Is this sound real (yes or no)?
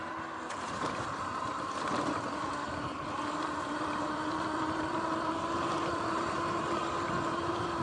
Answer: no